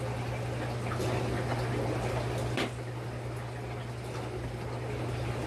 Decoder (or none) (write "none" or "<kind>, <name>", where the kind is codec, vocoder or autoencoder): none